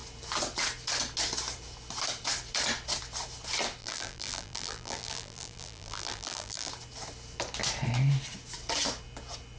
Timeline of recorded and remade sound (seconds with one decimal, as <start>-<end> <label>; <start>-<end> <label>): 0.0-3.8 recorded; 3.8-6.7 remade; 6.7-9.6 recorded